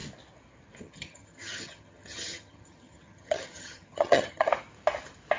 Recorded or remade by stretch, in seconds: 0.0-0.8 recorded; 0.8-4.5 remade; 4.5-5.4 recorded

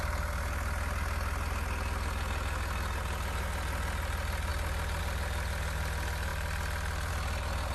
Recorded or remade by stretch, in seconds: 0.0-7.7 recorded

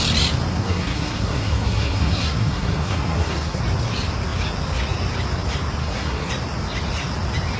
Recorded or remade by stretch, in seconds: 0.0-0.5 recorded; 0.5-3.6 remade; 3.6-5.8 recorded; 5.8-6.3 remade; 6.3-7.6 recorded

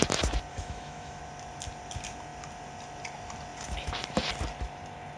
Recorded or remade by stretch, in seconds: 0.0-0.5 recorded; 0.5-1.2 remade; 1.2-5.2 recorded

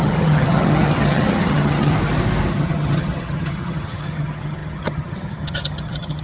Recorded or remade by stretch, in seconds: 0.0-1.9 remade; 1.9-2.5 recorded; 2.5-6.2 remade